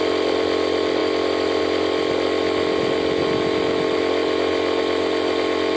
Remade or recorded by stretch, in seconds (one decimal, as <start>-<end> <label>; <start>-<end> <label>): 0.0-5.8 recorded